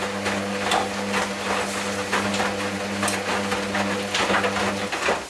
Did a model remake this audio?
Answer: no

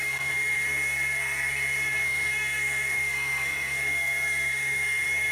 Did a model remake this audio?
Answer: yes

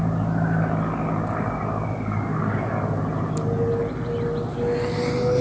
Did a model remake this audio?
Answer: no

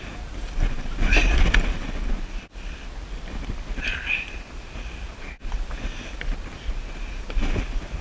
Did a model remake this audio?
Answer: no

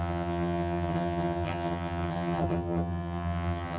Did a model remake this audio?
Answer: yes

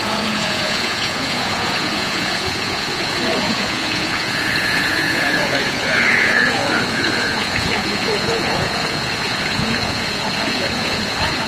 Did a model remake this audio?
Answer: yes